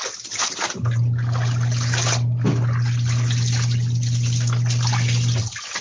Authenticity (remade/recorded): recorded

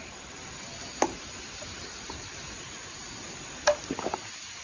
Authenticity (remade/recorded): recorded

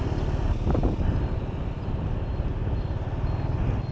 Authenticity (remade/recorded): recorded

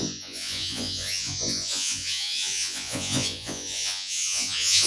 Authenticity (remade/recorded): remade